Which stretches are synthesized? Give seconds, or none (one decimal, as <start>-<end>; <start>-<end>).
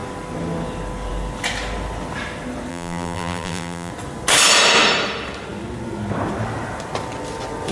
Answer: 2.7-3.9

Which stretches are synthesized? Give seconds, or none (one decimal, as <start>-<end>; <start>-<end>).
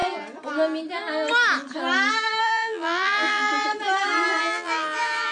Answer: 2.4-3.5; 4.4-5.3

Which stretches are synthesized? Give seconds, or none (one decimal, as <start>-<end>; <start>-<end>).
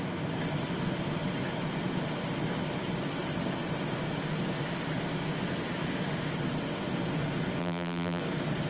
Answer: 7.6-8.2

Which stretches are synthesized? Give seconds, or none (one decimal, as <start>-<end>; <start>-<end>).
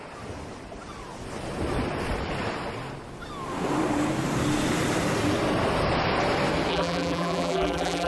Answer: 6.7-8.1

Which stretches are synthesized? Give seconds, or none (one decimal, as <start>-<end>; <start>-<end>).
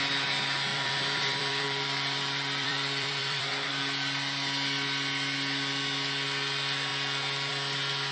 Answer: 0.7-3.5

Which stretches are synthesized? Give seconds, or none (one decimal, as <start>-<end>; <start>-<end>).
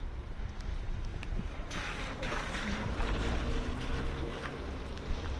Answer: 1.1-3.2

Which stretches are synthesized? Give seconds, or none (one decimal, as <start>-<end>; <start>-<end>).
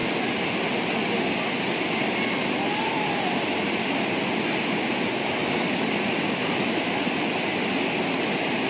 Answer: none